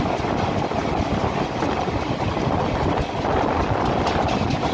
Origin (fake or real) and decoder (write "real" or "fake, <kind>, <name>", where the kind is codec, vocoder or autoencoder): real